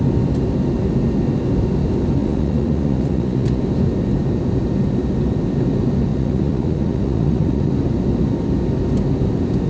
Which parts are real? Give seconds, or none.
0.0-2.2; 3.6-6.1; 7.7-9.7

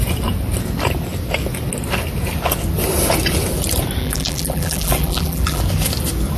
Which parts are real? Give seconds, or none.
0.0-4.0; 5.6-6.4

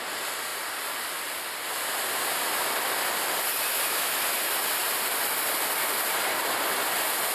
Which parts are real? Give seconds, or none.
0.0-3.7; 4.2-7.3

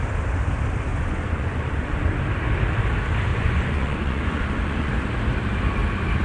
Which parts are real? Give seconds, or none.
0.0-0.9; 2.0-3.3; 4.9-6.2

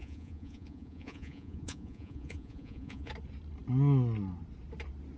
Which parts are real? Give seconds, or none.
3.1-5.2